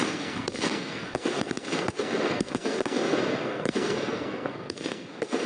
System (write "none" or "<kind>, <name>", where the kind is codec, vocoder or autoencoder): codec, SNAC